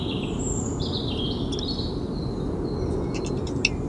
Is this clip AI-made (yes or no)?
no